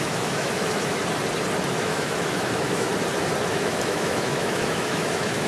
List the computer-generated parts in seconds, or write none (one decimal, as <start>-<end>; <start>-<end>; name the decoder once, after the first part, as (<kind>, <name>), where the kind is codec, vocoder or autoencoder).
0.0-1.0 (autoencoder, DAC-VAE); 1.7-2.9; 3.5-5.5